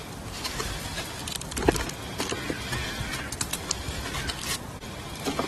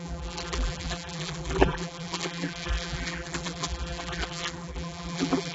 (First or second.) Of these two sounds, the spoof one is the second